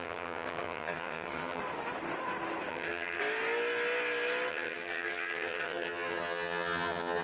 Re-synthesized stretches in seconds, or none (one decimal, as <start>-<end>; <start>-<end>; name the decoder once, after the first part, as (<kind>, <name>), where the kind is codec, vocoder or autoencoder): 0.0-1.6 (vocoder, HiFi-GAN); 2.7-3.2; 4.5-7.2